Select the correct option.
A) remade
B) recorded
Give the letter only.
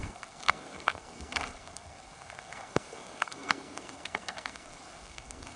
A